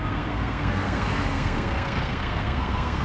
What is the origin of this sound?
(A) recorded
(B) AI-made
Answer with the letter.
B